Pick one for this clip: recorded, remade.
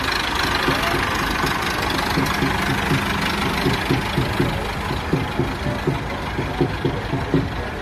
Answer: recorded